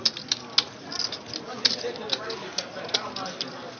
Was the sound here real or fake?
real